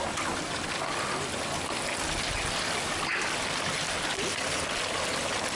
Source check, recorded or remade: recorded